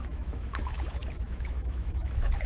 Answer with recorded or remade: remade